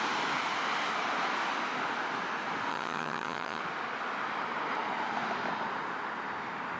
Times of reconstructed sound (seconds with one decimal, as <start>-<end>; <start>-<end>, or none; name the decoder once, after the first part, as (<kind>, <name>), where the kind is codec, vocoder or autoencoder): 2.7-3.6 (vocoder, HiFi-GAN)